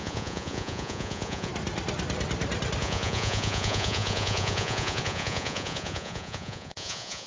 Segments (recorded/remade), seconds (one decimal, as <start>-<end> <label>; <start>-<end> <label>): 0.0-1.5 remade; 1.5-2.8 recorded; 2.8-7.3 remade